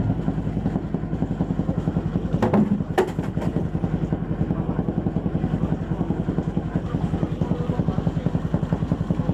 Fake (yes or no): no